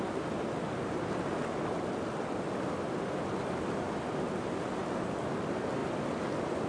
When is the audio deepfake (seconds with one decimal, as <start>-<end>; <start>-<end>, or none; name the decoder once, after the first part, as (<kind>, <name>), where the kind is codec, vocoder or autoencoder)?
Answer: none